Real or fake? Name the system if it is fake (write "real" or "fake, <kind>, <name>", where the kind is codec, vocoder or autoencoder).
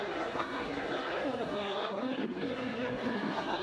fake, codec, SNAC